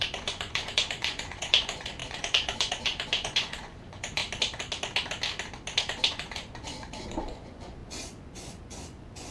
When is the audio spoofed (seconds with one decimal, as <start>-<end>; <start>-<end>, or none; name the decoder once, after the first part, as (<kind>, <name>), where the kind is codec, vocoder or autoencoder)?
0.0-4.2 (vocoder, Vocos); 5.8-9.3